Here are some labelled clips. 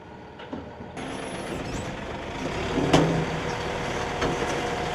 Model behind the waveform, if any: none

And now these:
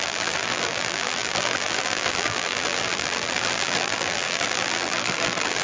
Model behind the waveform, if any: vocoder, BigVGAN v2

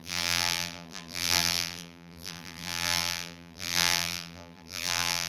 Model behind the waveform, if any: vocoder, BigVGAN v2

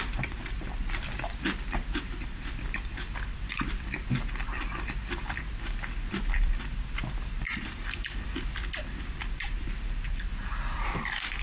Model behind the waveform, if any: vocoder, BigVGAN v2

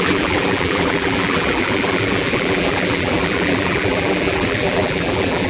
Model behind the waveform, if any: vocoder, BigVGAN v2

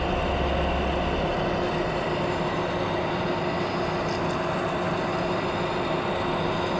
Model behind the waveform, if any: none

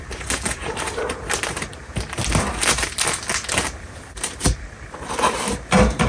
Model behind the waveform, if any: vocoder, BigVGAN v2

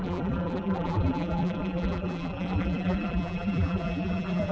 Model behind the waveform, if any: vocoder, BigVGAN v2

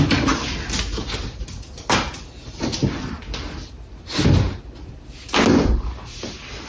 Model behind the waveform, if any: none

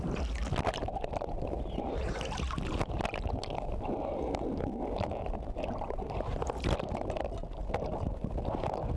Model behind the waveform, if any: none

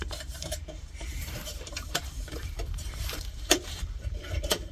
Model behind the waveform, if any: vocoder, BigVGAN v2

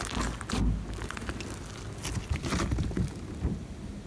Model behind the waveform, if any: none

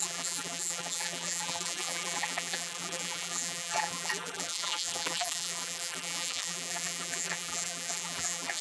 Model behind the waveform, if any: vocoder, BigVGAN v2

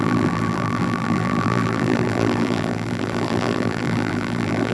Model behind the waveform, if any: vocoder, BigVGAN v2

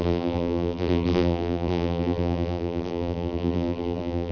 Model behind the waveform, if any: vocoder, BigVGAN v2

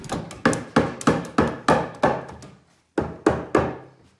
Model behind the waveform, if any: none